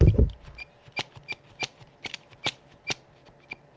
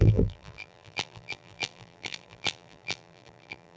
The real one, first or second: first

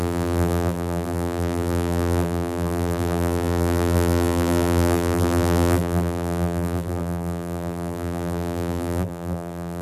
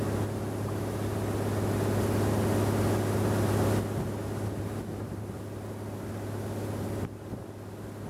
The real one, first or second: second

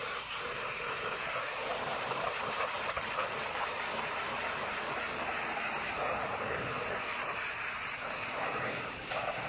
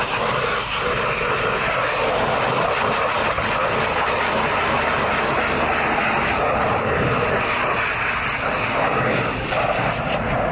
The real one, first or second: second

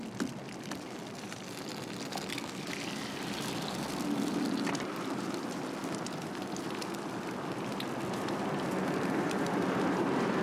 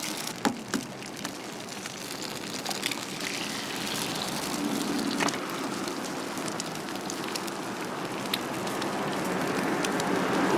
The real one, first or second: second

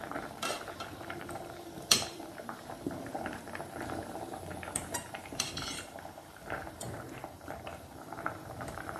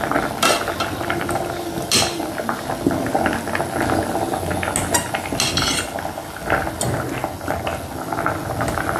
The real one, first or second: second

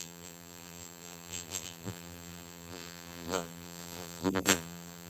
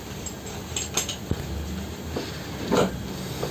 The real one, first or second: second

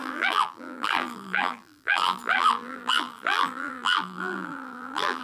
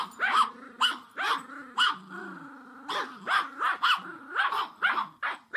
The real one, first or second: second